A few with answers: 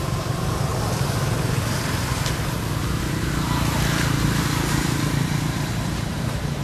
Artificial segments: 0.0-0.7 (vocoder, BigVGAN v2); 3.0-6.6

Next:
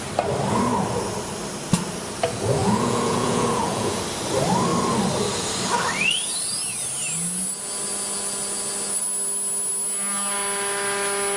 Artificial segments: 2.6-4.0 (vocoder, Vocos)